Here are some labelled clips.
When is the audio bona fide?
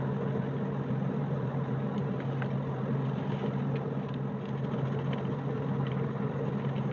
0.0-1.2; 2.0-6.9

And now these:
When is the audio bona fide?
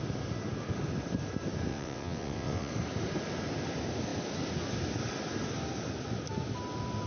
0.0-1.7; 2.7-7.1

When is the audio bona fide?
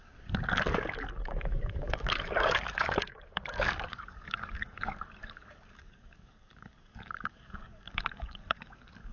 none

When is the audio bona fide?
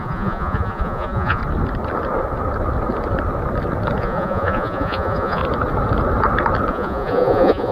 1.4-4.0; 5.4-6.7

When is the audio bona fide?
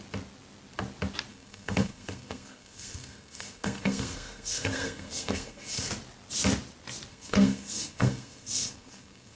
0.0-1.3; 5.9-7.1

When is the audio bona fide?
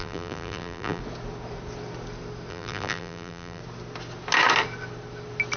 1.0-2.5; 3.6-5.6